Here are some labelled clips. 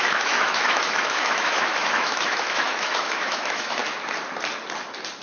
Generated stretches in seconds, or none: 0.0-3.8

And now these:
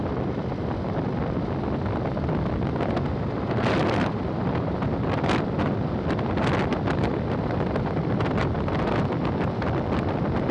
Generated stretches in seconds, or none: 3.8-5.3; 6.7-10.1

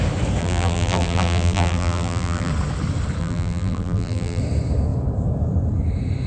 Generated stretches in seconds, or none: 0.4-2.5; 3.2-4.4

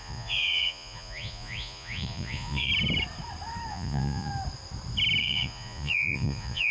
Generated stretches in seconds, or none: 0.0-2.7; 3.7-4.3; 5.2-6.7

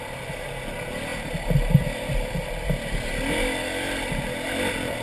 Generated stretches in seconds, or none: none

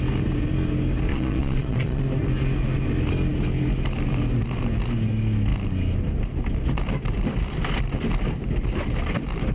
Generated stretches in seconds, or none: 1.1-2.0

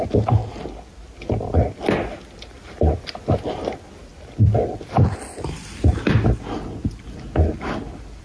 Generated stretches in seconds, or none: none

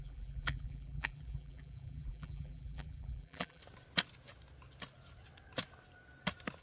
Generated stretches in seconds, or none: 0.0-3.6